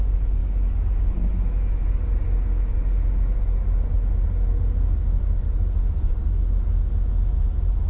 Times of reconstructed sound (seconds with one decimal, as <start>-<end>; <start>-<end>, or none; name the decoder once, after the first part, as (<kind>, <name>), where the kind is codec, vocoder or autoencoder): none